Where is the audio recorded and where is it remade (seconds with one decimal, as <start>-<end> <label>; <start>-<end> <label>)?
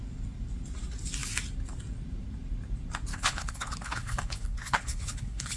0.0-3.1 recorded; 3.1-5.6 remade